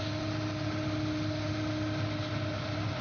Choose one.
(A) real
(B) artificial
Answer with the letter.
A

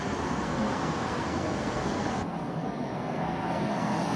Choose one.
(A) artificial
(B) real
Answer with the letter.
A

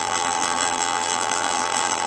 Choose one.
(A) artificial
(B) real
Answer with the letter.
A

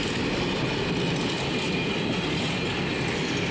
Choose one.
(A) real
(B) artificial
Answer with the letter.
A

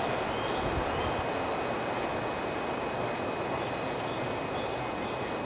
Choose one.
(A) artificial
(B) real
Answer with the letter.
B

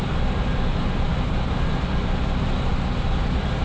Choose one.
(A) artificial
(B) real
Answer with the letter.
B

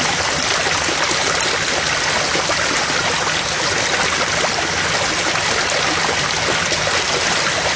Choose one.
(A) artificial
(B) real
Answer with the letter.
B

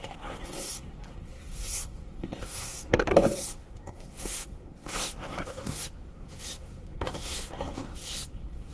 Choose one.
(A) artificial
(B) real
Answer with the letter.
A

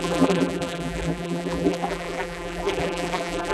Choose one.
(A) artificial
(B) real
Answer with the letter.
A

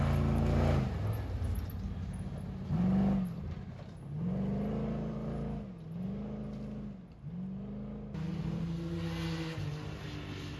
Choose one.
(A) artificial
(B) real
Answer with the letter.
B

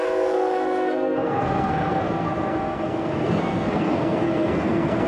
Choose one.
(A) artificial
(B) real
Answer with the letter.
A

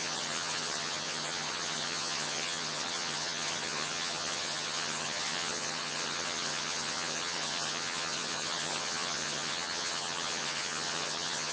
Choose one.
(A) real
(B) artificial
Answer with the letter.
B